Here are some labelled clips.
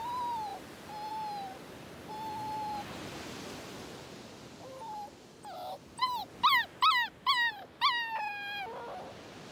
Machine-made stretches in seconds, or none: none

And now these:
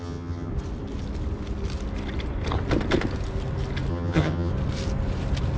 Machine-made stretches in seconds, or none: 0.0-0.5 (vocoder, HiFi-GAN); 3.9-4.5

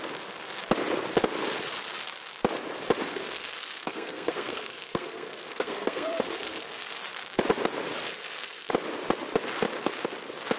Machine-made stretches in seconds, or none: 3.1-7.0 (codec, SNAC); 8.1-8.7